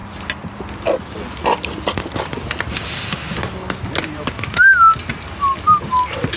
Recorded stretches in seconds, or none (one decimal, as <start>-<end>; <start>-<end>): 0.0-6.4